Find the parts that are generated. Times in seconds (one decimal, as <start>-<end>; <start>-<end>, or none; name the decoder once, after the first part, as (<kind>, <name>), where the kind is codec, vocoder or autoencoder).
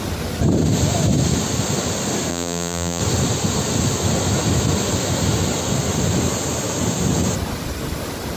2.3-3.0 (vocoder, BigVGAN v2)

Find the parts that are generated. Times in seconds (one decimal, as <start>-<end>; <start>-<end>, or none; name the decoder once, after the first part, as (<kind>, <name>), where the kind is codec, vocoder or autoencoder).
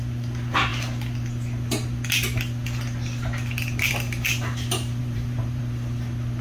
5.0-5.6 (vocoder, BigVGAN v2)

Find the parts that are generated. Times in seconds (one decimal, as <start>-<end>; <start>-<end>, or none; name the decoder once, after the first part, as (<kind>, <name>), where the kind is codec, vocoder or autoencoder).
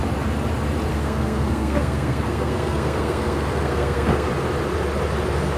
0.9-4.3 (codec, SNAC)